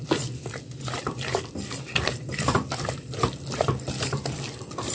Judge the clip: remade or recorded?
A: remade